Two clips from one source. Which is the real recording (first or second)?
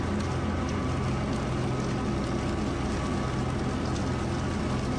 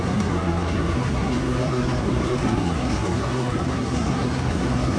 first